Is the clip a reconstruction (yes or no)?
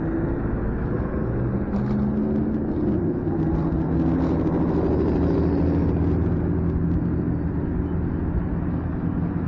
no